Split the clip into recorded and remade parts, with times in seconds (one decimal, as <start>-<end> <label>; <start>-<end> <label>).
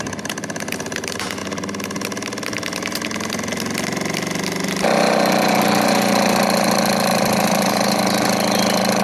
0.0-7.1 recorded; 7.1-8.0 remade; 8.0-9.0 recorded